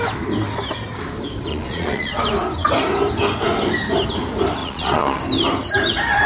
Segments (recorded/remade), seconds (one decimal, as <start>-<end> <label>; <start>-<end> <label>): 0.0-1.5 recorded; 1.5-2.2 remade; 2.2-4.6 recorded; 4.6-5.2 remade; 5.2-6.3 recorded